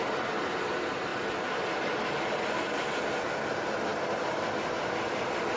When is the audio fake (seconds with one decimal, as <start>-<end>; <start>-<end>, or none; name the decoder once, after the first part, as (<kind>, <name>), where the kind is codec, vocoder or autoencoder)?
none